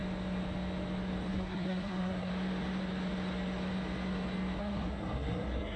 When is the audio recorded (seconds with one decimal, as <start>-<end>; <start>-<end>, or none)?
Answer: 0.0-1.3; 2.3-4.6